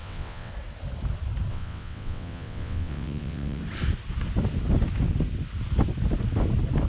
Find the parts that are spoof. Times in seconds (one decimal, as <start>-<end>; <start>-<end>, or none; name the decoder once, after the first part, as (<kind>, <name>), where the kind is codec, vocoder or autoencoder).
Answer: 0.0-0.5 (vocoder, WaveNeXt); 1.5-3.6